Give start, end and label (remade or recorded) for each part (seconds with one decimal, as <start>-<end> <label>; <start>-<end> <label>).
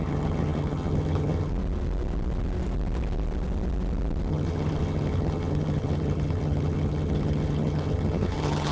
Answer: 0.0-1.5 remade; 1.5-4.3 recorded; 4.3-8.7 remade